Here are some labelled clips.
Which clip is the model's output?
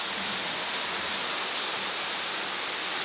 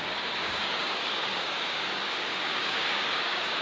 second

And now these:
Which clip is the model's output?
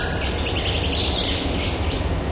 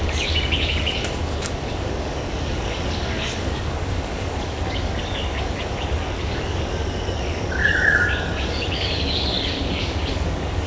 second